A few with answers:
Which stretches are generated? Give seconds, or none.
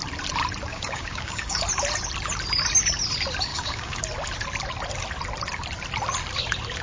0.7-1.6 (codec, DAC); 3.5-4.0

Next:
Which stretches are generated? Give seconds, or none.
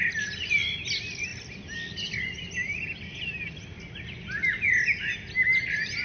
none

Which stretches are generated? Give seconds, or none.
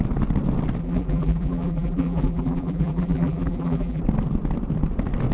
0.8-4.0 (vocoder, BigVGAN v2)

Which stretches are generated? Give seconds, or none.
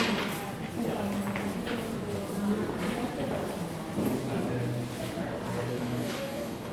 5.7-6.7 (codec, DAC)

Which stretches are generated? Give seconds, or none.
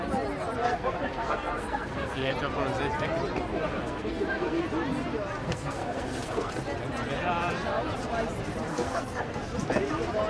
0.6-2.3 (codec, SNAC); 3.7-4.6; 5.4-6.5; 8.7-9.4